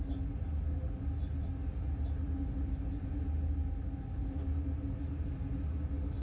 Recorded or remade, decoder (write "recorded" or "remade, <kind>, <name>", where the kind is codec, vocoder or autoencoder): recorded